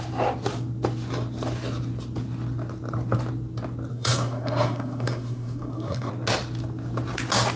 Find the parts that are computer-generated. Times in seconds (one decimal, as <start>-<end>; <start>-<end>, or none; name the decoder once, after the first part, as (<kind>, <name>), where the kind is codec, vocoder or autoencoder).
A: 3.9-6.1 (codec, SNAC)